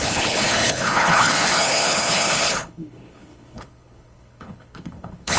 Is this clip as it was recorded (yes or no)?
no